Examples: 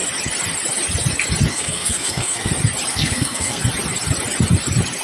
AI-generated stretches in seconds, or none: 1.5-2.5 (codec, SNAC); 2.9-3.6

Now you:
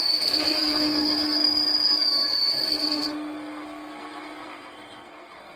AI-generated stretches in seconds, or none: 0.0-5.6 (codec, SNAC)

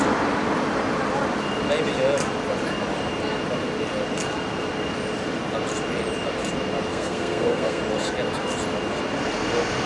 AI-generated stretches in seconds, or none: 6.9-7.8 (codec, SNAC)

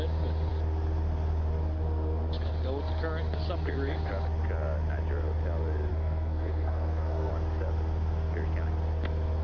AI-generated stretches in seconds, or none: 5.9-7.3 (codec, SNAC)

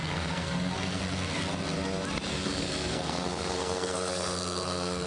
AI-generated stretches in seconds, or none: 0.0-1.0 (codec, SNAC); 2.3-5.1

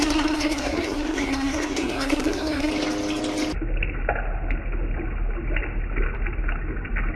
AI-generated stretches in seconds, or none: 0.0-2.7 (codec, SNAC)

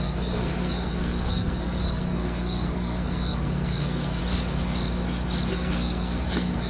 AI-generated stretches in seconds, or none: 0.0-4.2 (codec, SNAC); 5.5-6.7